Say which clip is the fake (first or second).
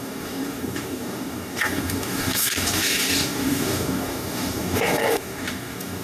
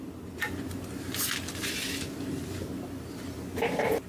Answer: first